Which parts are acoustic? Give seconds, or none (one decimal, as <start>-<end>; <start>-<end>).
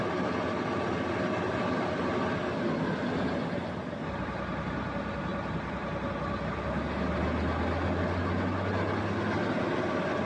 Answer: 0.0-10.3